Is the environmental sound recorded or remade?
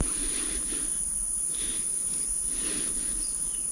recorded